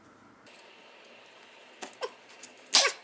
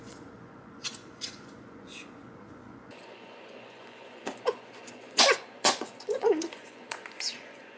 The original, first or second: first